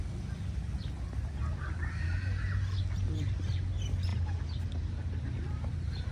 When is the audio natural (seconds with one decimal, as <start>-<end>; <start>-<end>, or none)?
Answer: 0.0-2.8